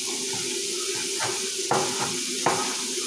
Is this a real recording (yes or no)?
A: yes